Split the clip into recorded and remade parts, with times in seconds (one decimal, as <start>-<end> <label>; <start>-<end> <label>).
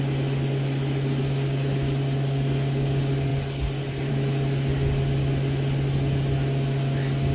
0.0-7.3 recorded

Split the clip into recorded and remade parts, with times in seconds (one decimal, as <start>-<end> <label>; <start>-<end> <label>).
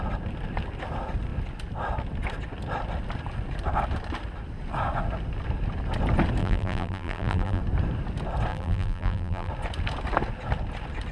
0.0-6.4 recorded; 6.4-7.6 remade; 7.6-8.5 recorded; 8.5-9.5 remade; 9.5-11.1 recorded